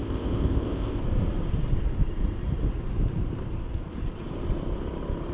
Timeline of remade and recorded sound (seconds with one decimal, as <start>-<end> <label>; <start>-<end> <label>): 0.0-1.0 remade; 1.0-5.3 recorded